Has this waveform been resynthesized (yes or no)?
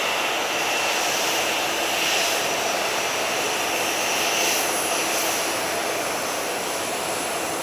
no